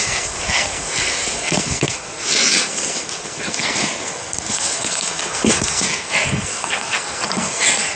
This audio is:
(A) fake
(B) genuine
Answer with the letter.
A